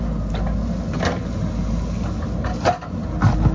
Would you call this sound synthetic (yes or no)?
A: no